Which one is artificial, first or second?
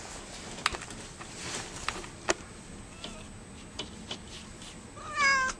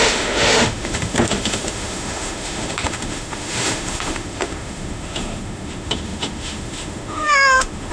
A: second